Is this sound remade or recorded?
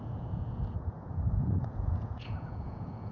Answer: remade